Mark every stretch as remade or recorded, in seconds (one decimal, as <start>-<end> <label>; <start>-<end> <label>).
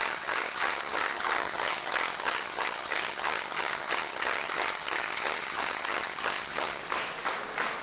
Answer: 0.0-6.8 remade; 6.8-7.8 recorded